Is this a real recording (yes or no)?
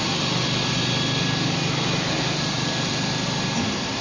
yes